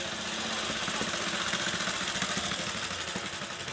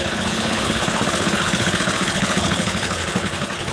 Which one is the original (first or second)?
first